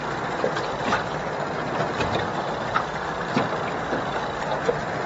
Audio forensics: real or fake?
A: real